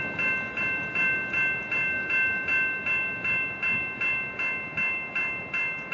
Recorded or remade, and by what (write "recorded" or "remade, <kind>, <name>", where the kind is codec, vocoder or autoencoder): recorded